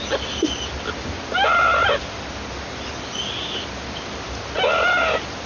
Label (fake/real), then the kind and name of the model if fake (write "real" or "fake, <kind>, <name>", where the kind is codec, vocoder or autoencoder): real